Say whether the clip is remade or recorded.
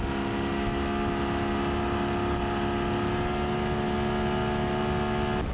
recorded